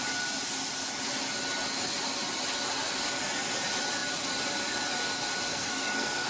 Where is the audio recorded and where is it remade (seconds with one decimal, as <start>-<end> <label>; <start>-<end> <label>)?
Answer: 0.0-5.5 recorded; 5.5-6.3 remade